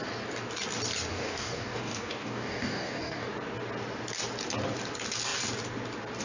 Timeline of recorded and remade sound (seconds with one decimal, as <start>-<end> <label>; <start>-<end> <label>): 0.0-1.1 recorded; 1.1-3.3 remade; 3.3-6.2 recorded